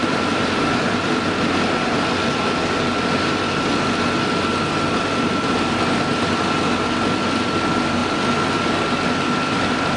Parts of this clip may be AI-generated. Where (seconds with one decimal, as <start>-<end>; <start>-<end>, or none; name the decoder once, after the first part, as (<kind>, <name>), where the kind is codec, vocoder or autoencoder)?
0.0-2.5 (vocoder, BigVGAN v2)